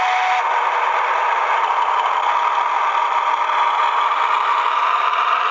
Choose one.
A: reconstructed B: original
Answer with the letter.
B